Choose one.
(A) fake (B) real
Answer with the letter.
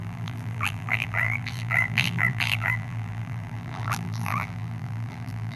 A